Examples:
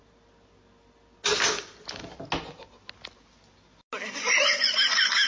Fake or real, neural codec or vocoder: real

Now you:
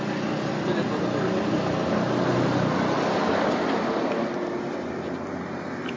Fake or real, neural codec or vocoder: real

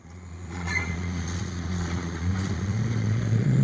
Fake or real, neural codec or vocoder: fake, vocoder, Vocos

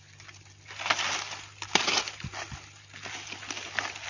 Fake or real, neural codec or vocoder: real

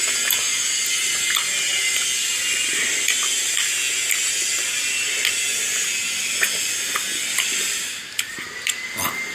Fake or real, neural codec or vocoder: real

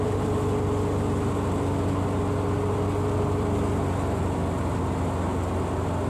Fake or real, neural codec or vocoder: real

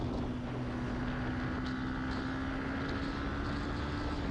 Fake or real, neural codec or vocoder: real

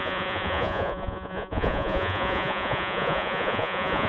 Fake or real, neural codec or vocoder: fake, vocoder, Vocos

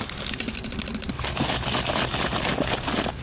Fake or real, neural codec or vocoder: real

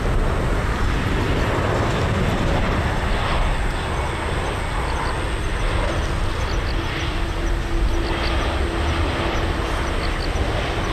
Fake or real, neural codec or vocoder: real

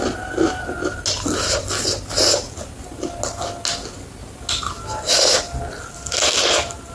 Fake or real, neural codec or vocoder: real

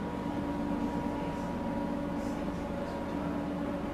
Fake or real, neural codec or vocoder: real